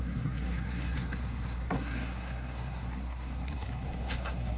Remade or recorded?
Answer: remade